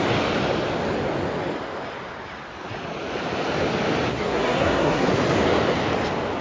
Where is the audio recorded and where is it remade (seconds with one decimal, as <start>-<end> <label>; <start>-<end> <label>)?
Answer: 0.0-4.1 recorded; 4.1-5.1 remade; 5.1-6.4 recorded